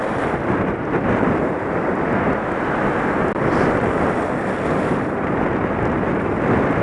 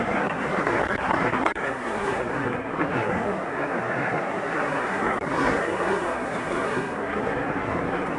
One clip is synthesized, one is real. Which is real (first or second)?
first